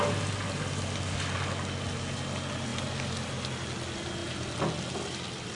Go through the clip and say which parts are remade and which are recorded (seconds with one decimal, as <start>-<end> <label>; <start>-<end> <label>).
0.0-5.5 recorded